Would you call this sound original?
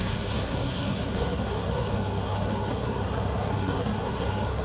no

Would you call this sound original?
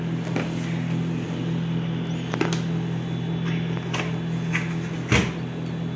yes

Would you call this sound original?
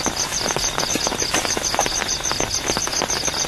yes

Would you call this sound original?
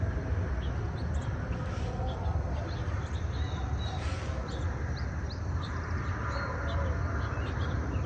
yes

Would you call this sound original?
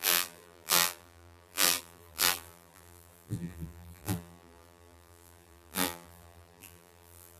no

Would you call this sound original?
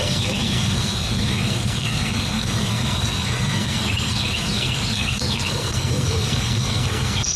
no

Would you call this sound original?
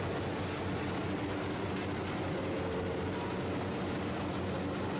yes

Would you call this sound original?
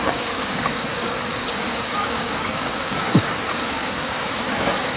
no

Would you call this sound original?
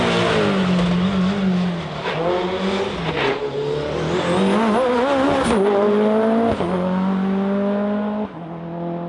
yes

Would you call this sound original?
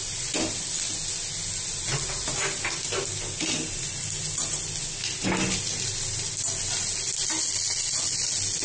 yes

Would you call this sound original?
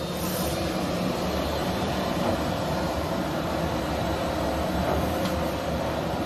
yes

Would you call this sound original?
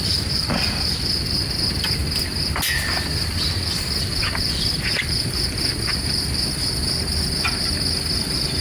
yes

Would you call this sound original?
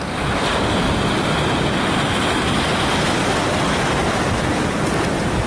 yes